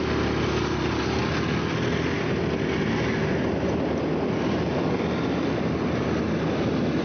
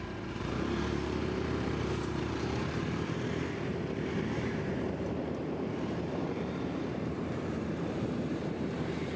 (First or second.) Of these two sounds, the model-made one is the second